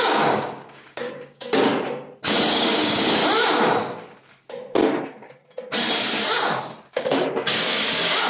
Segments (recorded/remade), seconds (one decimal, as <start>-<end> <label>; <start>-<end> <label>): 0.0-1.7 remade; 1.7-2.5 recorded; 2.5-3.2 remade; 3.2-6.9 recorded; 6.9-8.3 remade

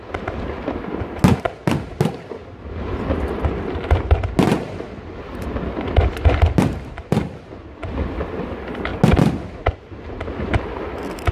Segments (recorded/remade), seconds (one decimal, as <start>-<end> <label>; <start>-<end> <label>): 0.0-11.3 recorded

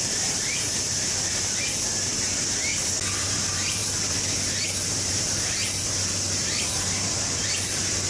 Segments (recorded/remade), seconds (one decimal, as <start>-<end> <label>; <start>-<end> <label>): 0.0-2.7 remade; 2.7-3.2 recorded; 3.2-3.8 remade; 3.8-4.5 recorded; 4.5-8.1 remade